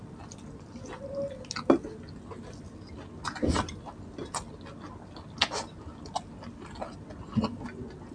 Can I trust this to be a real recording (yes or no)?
yes